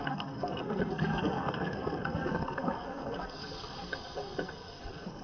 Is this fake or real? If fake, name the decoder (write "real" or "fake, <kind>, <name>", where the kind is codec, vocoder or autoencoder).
fake, codec, SNAC